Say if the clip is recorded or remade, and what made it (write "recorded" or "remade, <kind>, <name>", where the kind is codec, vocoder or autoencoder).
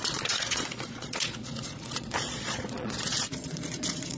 remade, vocoder, Vocos